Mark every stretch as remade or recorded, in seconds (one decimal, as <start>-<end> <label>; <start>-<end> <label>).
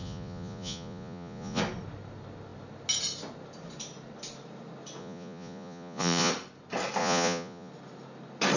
0.0-1.6 remade; 1.6-5.0 recorded; 5.0-6.3 remade; 6.3-7.0 recorded; 7.0-7.7 remade; 7.7-8.6 recorded